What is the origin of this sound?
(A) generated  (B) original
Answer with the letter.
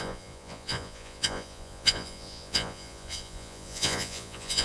A